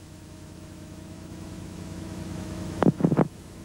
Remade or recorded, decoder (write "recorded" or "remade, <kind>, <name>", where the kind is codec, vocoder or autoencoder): remade, autoencoder, DAC-VAE